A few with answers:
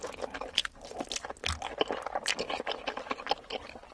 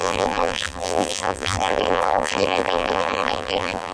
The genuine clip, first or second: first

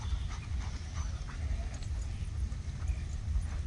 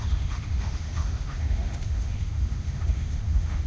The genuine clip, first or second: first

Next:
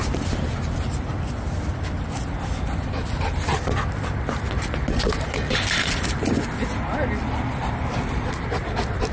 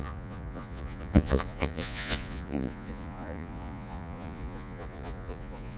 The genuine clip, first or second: first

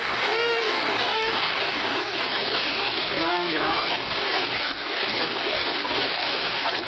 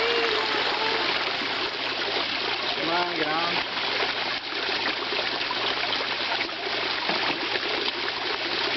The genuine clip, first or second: second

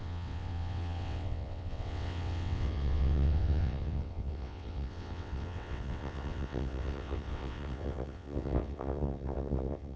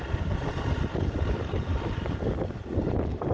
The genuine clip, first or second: second